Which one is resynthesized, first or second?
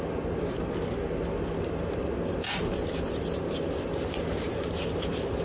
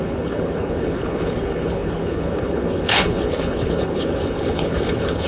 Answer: second